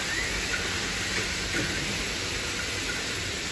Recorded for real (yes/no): yes